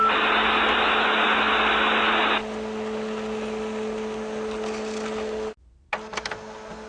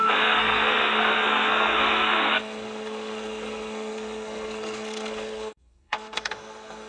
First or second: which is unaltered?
first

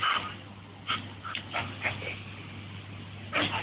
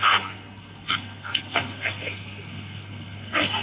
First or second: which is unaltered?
first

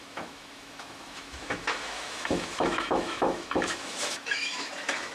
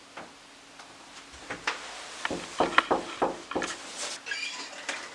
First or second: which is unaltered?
second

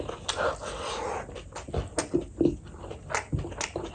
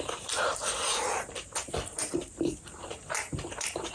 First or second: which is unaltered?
first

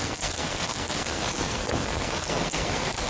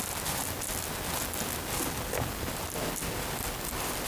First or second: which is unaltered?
second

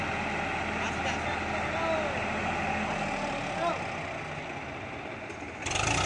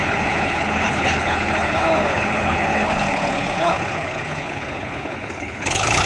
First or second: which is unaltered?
first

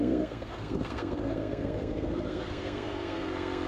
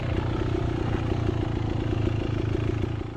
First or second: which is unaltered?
second